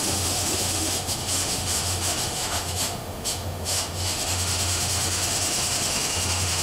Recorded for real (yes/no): no